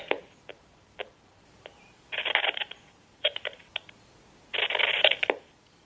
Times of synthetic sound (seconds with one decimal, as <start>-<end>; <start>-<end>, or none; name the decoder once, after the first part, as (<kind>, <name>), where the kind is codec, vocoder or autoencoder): 0.5-3.7 (vocoder, BigVGAN v2)